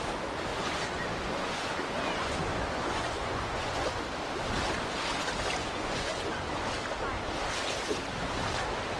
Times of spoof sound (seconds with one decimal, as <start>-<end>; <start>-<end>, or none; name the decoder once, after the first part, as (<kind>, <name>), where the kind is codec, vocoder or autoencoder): 0.5-4.0 (vocoder, Vocos); 5.6-6.7